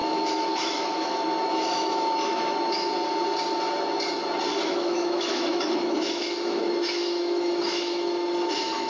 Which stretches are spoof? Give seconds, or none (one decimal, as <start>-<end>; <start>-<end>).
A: 0.0-2.9; 4.5-8.9